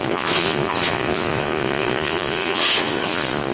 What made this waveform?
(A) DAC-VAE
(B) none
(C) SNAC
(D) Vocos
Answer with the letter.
D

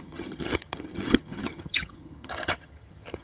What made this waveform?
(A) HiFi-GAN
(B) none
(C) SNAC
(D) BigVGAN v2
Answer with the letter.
A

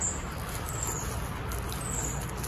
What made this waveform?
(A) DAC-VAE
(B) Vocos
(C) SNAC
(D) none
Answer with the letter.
D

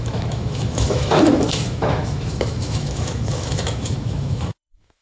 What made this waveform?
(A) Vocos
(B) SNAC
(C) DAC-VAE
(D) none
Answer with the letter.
C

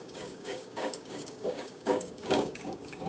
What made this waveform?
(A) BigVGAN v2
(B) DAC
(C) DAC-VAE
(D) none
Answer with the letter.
B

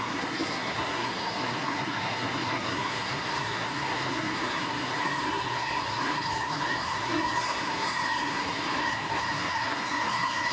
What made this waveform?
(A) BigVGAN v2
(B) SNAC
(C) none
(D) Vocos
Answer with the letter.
B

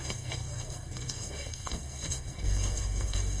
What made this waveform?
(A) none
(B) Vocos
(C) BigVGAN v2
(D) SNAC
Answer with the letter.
D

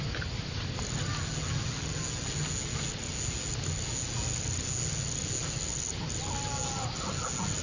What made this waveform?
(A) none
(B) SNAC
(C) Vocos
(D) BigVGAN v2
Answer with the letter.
A